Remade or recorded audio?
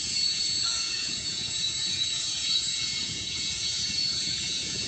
remade